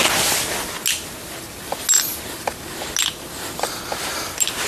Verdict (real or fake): real